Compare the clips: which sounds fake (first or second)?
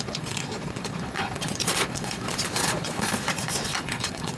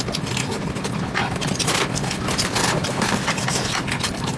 first